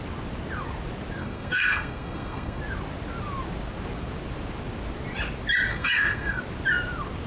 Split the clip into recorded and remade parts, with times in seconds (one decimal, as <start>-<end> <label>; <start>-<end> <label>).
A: 0.0-1.2 recorded; 1.2-2.6 remade; 2.6-5.7 recorded; 5.7-6.4 remade; 6.4-7.3 recorded